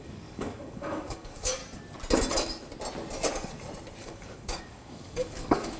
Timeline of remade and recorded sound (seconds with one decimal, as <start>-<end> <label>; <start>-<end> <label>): 0.0-1.6 remade; 1.6-4.0 recorded; 4.0-5.8 remade